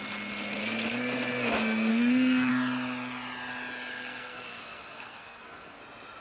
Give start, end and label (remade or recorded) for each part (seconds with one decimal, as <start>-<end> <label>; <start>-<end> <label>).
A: 0.0-1.9 recorded; 1.9-2.5 remade; 2.5-3.9 recorded; 3.9-5.8 remade; 5.8-6.2 recorded